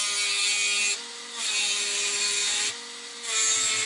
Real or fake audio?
real